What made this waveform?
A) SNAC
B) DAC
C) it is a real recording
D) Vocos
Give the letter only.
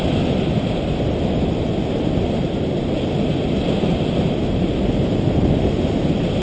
C